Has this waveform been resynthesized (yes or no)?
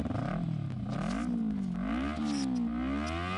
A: no